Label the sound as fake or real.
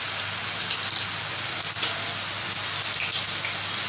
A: fake